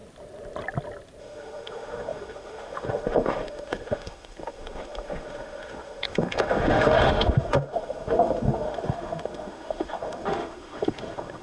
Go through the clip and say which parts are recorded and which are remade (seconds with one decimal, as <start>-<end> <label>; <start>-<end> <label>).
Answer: 0.0-1.2 recorded; 1.2-11.4 remade